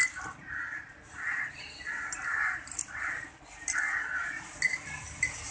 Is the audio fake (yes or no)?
no